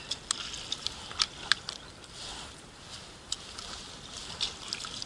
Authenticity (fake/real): real